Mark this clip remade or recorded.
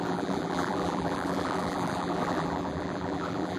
remade